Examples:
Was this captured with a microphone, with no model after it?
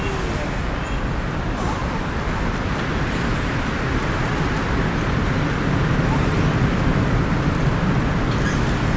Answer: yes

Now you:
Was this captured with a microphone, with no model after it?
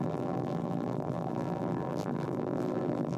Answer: no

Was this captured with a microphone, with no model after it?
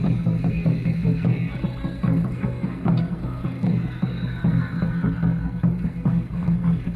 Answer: no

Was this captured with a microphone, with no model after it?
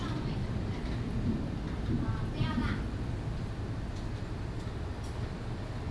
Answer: yes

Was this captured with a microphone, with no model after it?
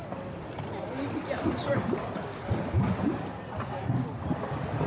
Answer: yes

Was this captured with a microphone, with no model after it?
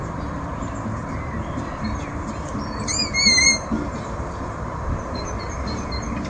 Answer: no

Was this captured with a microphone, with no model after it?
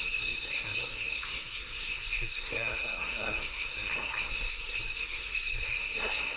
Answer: no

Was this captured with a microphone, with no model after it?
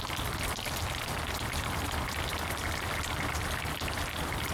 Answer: yes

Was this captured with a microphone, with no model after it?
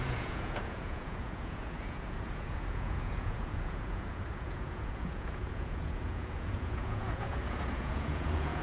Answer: no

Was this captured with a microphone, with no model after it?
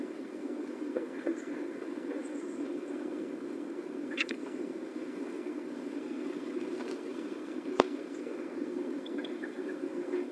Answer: no